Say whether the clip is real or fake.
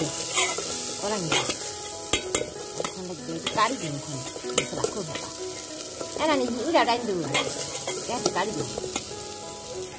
real